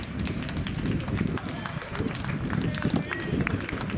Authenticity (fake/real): real